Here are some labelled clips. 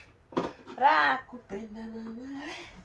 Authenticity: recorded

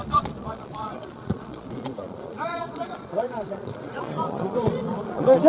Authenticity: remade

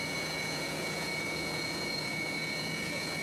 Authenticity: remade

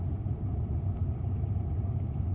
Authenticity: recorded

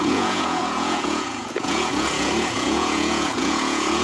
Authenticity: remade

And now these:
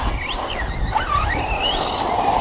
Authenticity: recorded